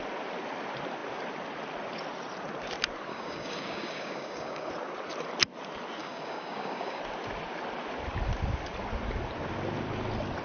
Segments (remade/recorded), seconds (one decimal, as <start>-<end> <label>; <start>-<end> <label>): 0.0-3.1 recorded; 3.1-4.7 remade; 4.7-6.0 recorded; 6.0-7.0 remade; 7.0-10.4 recorded